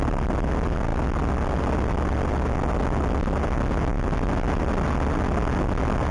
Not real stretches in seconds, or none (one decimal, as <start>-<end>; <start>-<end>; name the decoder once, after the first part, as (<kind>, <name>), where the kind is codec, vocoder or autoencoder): none